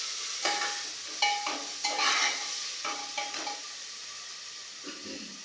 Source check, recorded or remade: recorded